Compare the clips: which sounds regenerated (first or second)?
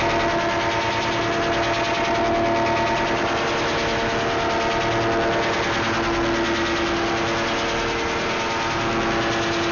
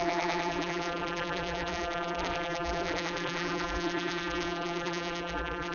second